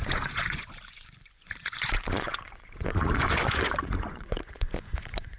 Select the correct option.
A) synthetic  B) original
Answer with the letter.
A